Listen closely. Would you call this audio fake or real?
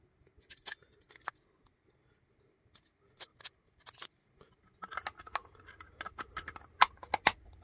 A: real